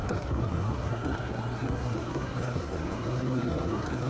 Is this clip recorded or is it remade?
remade